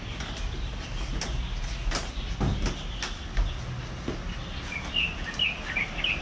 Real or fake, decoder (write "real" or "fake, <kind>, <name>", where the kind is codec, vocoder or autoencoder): real